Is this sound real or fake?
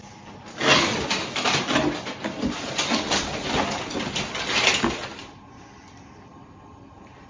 real